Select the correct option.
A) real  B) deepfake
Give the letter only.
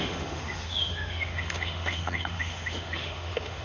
B